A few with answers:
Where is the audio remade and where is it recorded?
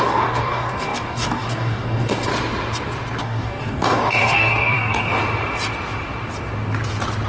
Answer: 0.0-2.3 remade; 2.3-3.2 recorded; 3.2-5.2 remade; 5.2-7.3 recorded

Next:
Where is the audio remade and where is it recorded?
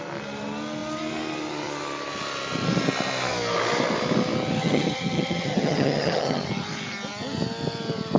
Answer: 0.0-4.6 recorded; 4.6-6.4 remade; 6.4-8.2 recorded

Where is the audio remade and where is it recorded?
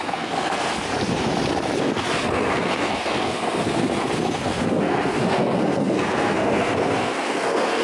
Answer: 0.0-0.7 remade; 0.7-1.8 recorded; 1.8-7.8 remade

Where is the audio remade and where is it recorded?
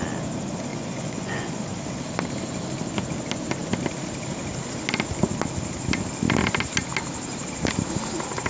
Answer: 0.0-0.7 recorded; 0.7-1.6 remade; 1.6-8.5 recorded